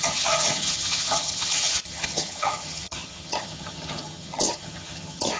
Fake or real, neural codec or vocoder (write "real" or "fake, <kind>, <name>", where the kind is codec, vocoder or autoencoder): fake, vocoder, HiFi-GAN